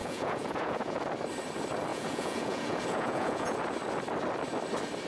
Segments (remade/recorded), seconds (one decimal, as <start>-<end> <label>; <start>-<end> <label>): 0.0-1.0 remade; 1.0-1.9 recorded; 1.9-3.6 remade; 3.6-5.1 recorded